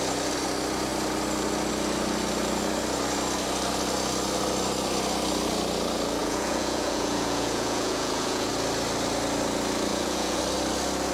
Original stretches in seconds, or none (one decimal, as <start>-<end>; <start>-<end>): 0.0-6.2; 8.5-9.9; 10.4-11.1